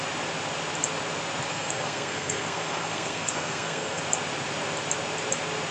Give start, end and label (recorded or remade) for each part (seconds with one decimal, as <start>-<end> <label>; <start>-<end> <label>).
0.0-1.5 recorded; 1.5-4.0 remade; 4.0-5.7 recorded